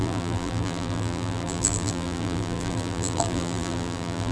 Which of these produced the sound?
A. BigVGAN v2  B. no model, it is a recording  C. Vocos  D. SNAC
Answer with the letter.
A